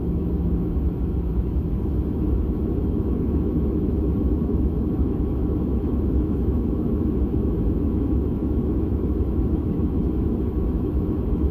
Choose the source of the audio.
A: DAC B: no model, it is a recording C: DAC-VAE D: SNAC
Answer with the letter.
C